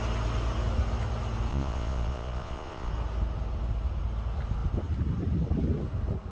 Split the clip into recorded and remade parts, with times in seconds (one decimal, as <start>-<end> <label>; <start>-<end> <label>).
0.0-1.5 recorded; 1.5-2.9 remade; 2.9-6.3 recorded